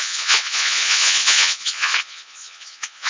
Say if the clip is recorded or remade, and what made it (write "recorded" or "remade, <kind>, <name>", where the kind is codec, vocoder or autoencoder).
remade, vocoder, Vocos